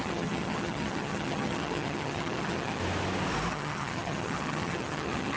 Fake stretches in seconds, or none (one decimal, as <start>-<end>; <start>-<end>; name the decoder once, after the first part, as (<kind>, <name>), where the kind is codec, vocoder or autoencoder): 0.0-2.8 (vocoder, HiFi-GAN); 3.5-5.4